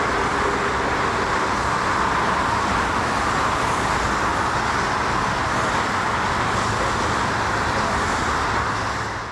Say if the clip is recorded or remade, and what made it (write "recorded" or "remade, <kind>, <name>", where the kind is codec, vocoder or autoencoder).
recorded